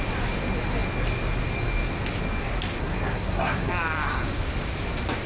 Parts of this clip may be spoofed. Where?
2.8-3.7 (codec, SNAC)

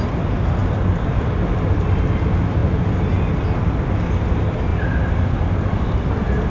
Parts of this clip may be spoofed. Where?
none